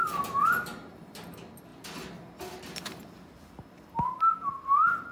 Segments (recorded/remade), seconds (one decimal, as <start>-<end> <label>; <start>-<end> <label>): 0.0-5.1 recorded